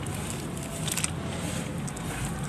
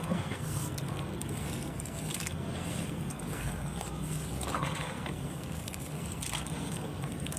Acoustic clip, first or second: first